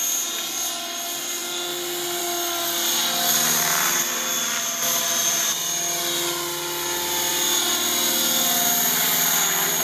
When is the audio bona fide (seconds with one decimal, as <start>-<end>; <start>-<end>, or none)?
0.0-9.8